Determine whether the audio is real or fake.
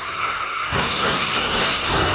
fake